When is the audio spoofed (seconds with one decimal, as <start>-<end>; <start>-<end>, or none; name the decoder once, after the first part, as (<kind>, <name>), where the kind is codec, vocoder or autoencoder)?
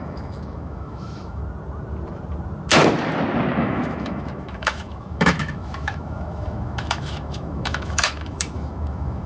0.0-1.4 (autoencoder, DAC-VAE); 3.6-9.3